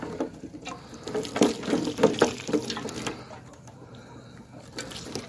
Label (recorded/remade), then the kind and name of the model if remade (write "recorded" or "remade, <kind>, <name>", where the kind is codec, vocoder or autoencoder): recorded